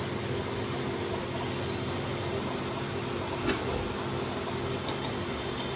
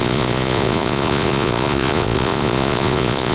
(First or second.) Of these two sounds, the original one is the first